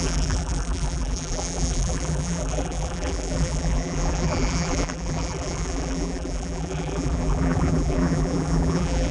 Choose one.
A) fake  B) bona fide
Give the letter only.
A